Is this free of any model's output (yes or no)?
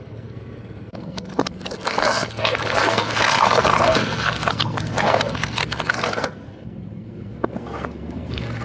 no